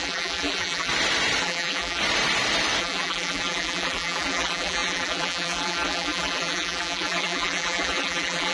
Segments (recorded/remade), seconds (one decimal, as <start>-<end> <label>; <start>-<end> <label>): 0.0-0.9 remade; 0.9-1.4 recorded; 1.4-2.0 remade; 2.0-2.8 recorded; 2.8-8.5 remade